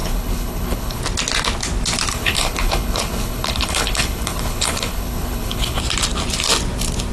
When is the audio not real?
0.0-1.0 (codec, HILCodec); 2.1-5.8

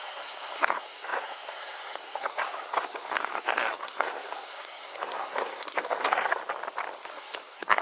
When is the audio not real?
0.0-6.4 (codec, SNAC); 7.1-7.8

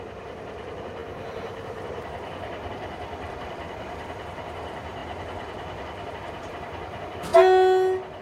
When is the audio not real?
0.0-5.0 (vocoder, BigVGAN v2); 6.1-7.3

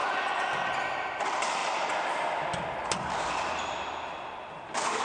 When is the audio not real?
0.0-0.5 (vocoder, Vocos)

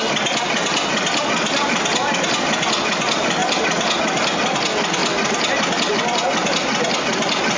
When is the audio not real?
none

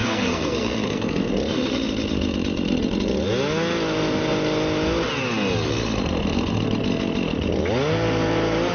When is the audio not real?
0.0-1.3 (codec, SNAC)

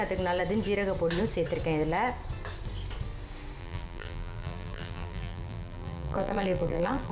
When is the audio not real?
3.6-7.1 (vocoder, BigVGAN v2)

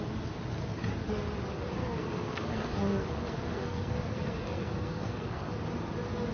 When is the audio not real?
1.8-5.5 (codec, SNAC)